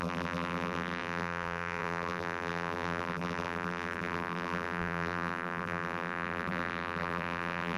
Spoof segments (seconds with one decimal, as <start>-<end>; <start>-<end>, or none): 0.0-7.8